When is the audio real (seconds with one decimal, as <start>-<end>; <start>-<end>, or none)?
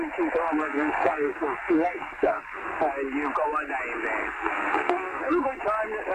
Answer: 0.0-0.6; 2.8-4.2; 5.6-6.1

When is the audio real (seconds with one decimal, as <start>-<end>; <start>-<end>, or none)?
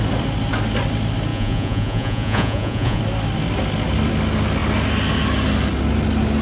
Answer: 0.0-1.3; 3.0-6.4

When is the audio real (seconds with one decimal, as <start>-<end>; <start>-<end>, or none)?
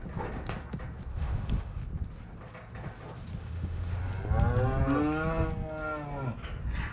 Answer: 0.0-1.1; 1.8-3.4; 4.0-6.9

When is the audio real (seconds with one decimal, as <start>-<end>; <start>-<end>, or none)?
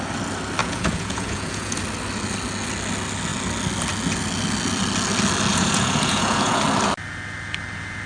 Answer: 0.0-0.6; 1.8-5.5; 6.6-8.1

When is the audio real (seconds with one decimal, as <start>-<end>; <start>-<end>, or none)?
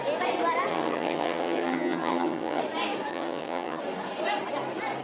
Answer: 0.0-0.7; 2.6-3.1; 3.8-5.0